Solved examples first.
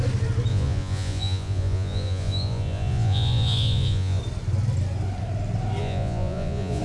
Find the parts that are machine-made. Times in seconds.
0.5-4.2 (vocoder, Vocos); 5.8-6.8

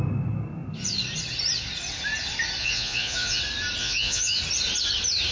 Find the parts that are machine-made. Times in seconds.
2.6-3.4 (vocoder, Vocos); 3.8-4.4

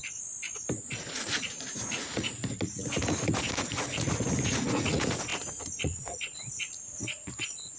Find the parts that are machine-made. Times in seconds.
1.1-7.8 (vocoder, Vocos)

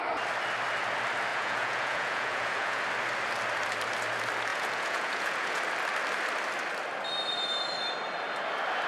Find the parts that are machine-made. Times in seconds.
1.3-2.8 (vocoder, Vocos); 4.5-5.6

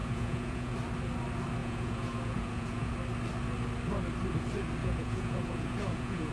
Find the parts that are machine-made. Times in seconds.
0.0-0.7 (vocoder, Vocos); 1.6-2.9; 4.8-6.3

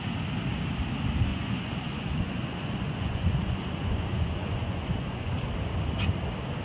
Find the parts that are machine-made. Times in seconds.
1.3-5.3 (vocoder, Vocos)

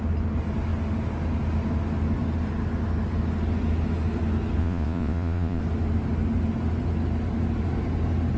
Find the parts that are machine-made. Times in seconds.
4.6-5.6 (vocoder, Vocos)

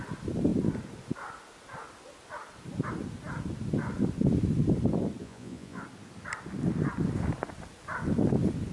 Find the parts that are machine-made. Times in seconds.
5.2-5.8 (vocoder, Vocos)